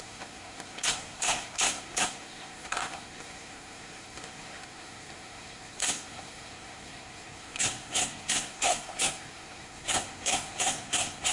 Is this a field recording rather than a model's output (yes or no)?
no